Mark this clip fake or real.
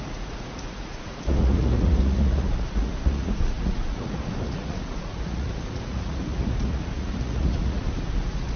fake